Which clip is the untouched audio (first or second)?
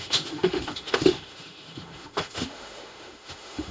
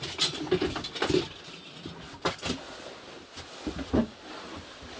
second